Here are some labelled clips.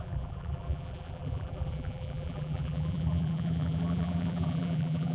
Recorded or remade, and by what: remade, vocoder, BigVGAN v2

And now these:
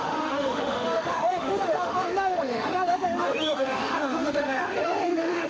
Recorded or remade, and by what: remade, autoencoder, DAC-VAE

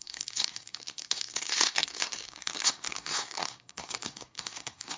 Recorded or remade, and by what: remade, codec, SNAC